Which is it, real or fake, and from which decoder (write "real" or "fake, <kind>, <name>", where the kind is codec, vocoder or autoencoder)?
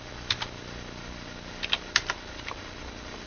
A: real